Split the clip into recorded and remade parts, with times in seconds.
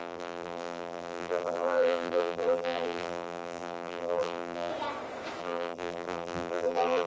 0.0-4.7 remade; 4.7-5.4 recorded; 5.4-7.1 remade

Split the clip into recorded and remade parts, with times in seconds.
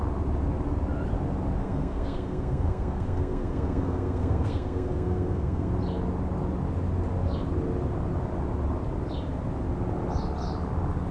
0.0-1.6 recorded; 1.6-5.7 remade; 5.7-11.1 recorded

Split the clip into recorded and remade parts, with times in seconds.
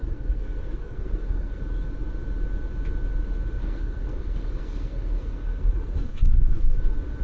0.0-1.6 remade; 1.6-3.6 recorded; 3.6-6.8 remade; 6.8-7.2 recorded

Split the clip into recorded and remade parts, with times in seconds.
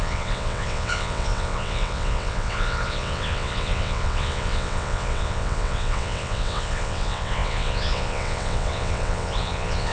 0.0-9.9 remade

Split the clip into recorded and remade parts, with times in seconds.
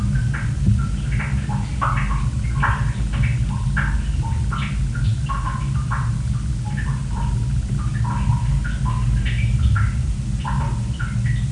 0.0-11.5 recorded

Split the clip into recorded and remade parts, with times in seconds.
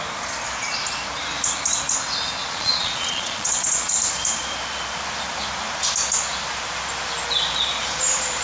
0.0-2.4 recorded; 2.4-3.9 remade; 3.9-8.4 recorded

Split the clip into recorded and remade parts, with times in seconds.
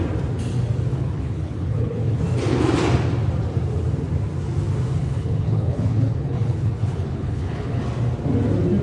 0.0-0.9 recorded; 0.9-2.2 remade; 2.2-5.0 recorded; 5.0-7.8 remade; 7.8-8.8 recorded